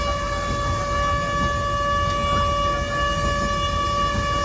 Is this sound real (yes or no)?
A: yes